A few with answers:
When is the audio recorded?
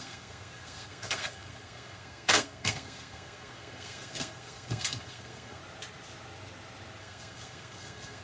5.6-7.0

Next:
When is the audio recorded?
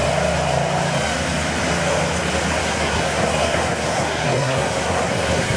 0.0-2.6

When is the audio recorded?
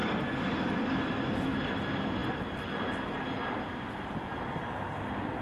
0.0-5.4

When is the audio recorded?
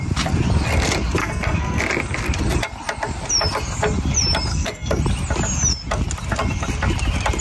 0.0-1.2; 1.8-4.5; 5.0-7.4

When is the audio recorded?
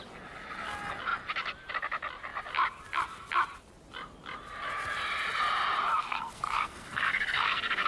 0.0-6.0